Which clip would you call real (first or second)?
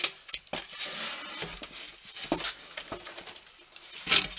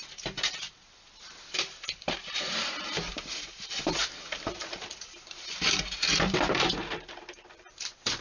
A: first